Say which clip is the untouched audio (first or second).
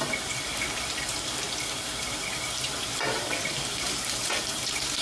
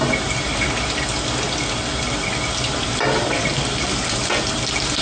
second